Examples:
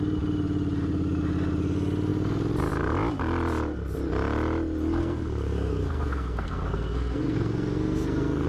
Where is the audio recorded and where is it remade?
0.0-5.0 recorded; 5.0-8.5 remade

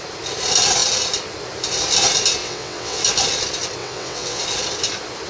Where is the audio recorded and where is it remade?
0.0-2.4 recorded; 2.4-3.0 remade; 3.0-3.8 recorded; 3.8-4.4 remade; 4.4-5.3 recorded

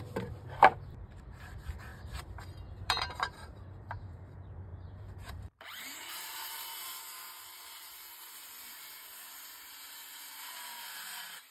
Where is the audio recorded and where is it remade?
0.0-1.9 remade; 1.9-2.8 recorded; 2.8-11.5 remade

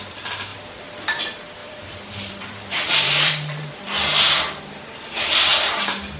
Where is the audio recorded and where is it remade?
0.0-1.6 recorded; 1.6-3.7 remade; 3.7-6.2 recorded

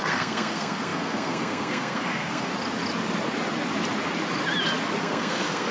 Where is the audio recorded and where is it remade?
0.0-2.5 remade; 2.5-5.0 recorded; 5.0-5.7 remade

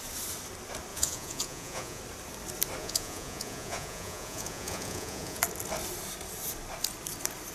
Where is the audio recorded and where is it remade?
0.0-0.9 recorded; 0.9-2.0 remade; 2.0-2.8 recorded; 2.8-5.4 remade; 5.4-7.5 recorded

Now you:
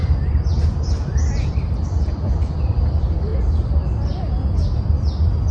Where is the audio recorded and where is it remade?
0.0-3.3 remade; 3.3-5.5 recorded

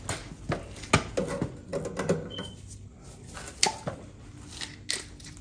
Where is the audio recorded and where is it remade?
0.0-5.4 recorded